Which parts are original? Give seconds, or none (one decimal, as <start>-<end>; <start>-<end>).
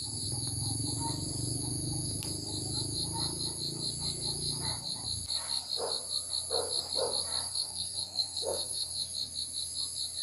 0.0-7.5; 9.0-10.2